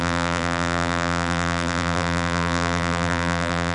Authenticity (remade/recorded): remade